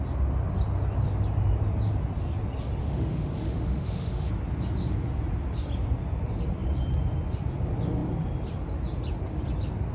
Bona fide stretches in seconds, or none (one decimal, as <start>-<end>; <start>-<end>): 0.0-2.8; 4.3-9.9